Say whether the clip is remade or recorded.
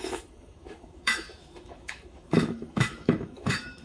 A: remade